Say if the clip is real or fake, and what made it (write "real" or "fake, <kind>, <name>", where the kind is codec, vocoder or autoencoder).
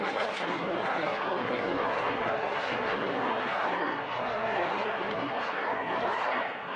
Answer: fake, codec, SNAC